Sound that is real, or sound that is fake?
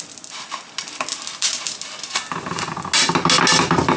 real